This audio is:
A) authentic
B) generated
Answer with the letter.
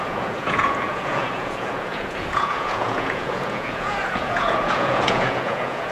B